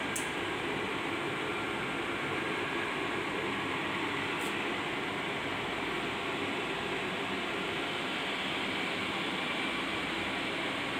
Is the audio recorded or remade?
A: recorded